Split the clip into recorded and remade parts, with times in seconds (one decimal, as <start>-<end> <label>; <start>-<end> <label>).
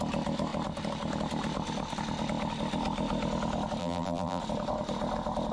0.0-3.8 recorded; 3.8-4.4 remade; 4.4-5.5 recorded